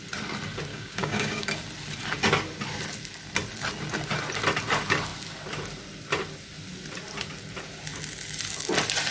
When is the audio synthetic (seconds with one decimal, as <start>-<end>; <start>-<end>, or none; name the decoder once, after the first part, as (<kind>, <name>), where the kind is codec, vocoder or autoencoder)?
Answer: 0.7-1.5 (codec, DAC)